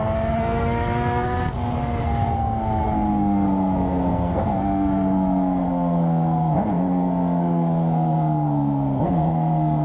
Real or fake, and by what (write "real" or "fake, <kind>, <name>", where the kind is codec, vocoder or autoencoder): fake, codec, SNAC